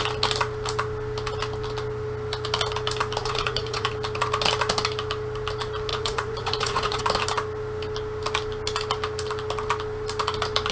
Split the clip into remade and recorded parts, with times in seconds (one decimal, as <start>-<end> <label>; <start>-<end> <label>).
0.0-3.2 recorded; 3.2-3.9 remade; 3.9-5.9 recorded; 5.9-7.0 remade; 7.0-10.7 recorded